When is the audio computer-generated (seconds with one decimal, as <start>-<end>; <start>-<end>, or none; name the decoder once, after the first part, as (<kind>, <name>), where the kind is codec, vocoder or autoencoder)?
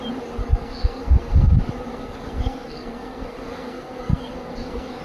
0.4-1.5 (codec, SNAC); 1.9-5.0